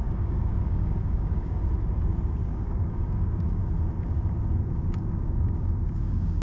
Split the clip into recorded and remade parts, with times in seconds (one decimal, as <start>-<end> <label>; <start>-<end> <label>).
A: 0.0-1.6 remade; 1.6-2.4 recorded; 2.4-3.6 remade; 3.6-4.6 recorded; 4.6-6.4 remade

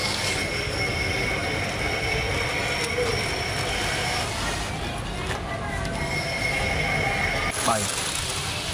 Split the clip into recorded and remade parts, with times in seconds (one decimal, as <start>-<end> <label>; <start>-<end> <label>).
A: 0.0-0.9 remade; 0.9-8.7 recorded

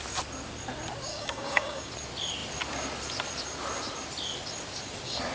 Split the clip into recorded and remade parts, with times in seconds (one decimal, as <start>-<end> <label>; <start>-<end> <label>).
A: 0.0-1.1 recorded; 1.1-1.9 remade; 1.9-5.3 recorded

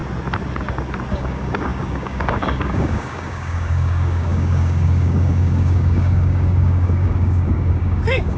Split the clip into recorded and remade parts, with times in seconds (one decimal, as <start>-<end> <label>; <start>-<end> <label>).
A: 0.0-1.1 recorded; 1.1-8.4 remade

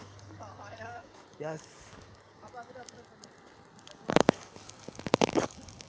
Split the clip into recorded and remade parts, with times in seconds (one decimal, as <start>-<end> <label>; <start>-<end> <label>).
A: 0.0-3.0 remade; 3.0-4.1 recorded; 4.1-5.9 remade

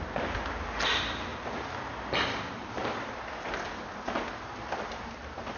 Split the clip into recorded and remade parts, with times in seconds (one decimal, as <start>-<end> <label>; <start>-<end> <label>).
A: 0.0-5.6 recorded